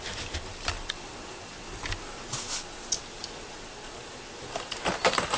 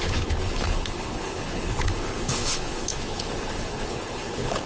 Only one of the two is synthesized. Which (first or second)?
second